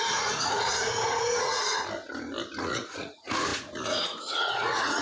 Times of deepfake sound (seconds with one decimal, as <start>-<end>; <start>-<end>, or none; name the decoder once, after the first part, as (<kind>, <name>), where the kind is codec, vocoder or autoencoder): 0.0-1.6 (vocoder, Vocos); 2.6-5.0